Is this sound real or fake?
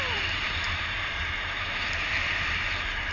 fake